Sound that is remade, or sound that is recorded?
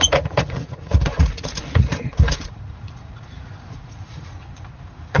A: remade